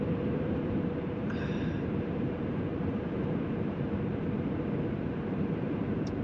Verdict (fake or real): fake